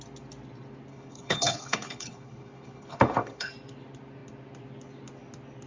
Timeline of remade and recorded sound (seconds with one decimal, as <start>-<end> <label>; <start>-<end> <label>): 0.0-0.9 recorded; 0.9-3.5 remade; 3.5-5.7 recorded